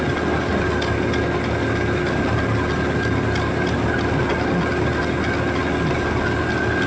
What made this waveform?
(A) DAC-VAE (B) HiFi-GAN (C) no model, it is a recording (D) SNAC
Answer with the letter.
C